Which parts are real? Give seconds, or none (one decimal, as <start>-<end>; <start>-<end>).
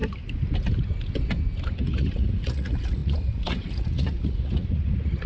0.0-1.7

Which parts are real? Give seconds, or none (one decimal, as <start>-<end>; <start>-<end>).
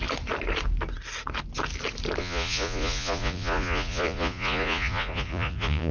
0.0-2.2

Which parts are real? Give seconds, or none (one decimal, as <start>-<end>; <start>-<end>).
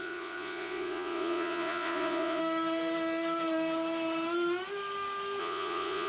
2.4-5.4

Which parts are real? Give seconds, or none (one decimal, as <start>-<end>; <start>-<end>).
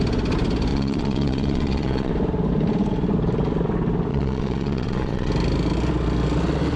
0.0-0.7; 2.1-4.1; 5.3-6.8